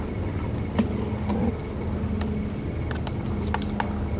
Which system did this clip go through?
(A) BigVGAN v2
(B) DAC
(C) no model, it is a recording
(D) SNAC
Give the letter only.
C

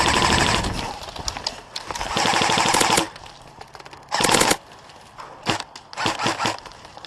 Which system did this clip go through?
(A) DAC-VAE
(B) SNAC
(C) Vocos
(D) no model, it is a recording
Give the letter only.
D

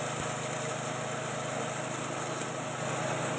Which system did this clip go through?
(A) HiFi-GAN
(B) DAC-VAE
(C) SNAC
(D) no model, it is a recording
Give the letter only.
D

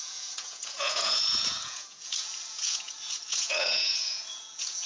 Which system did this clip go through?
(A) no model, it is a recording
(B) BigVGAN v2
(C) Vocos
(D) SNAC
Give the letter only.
C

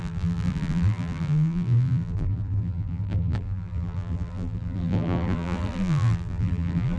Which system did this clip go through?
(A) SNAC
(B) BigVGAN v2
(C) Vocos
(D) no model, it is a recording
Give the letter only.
B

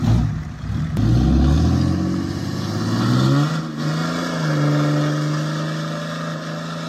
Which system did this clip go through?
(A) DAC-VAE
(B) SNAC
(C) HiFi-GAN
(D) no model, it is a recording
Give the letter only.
D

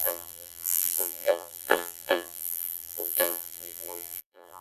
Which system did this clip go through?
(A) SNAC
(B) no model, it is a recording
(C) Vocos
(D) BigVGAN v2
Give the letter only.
D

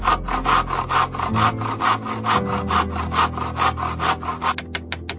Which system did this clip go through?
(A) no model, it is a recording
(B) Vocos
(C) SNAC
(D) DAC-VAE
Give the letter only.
A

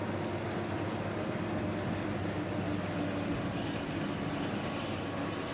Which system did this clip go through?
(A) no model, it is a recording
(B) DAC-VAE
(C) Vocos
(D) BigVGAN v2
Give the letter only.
A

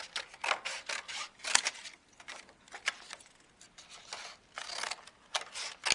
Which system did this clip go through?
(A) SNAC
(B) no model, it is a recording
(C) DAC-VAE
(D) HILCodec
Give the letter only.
B